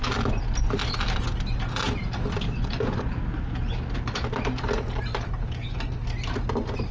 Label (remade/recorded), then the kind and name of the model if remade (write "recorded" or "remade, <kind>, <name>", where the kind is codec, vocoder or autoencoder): recorded